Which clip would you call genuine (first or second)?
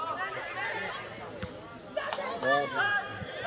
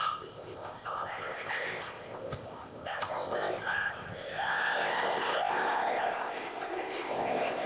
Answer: first